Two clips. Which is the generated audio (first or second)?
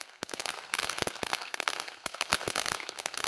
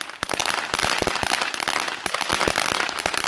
first